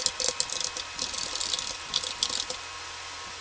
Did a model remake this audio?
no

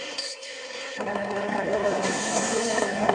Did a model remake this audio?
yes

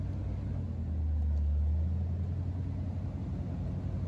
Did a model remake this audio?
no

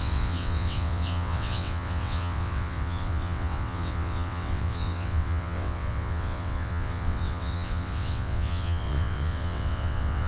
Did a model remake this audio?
yes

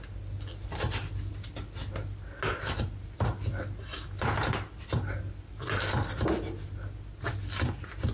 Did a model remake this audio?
no